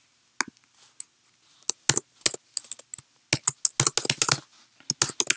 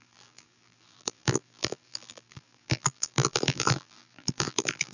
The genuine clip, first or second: first